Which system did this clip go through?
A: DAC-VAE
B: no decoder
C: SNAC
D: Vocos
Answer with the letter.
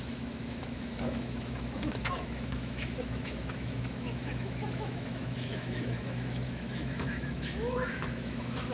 A